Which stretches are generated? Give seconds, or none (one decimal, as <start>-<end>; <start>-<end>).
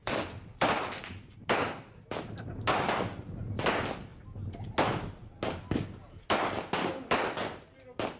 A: none